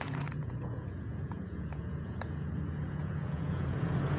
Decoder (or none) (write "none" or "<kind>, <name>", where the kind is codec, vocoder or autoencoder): vocoder, Vocos